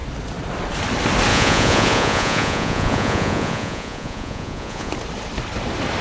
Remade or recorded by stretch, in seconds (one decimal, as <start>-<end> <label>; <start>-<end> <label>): 0.0-1.3 recorded; 1.3-4.9 remade; 4.9-6.0 recorded